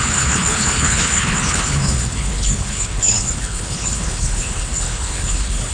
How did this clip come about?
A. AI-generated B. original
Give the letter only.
A